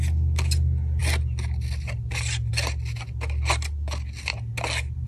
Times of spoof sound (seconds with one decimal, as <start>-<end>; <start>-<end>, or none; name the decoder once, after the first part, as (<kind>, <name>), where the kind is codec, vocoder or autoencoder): none